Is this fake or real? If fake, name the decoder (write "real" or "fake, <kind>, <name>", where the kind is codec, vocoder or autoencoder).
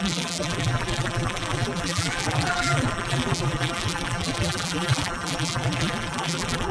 fake, vocoder, BigVGAN v2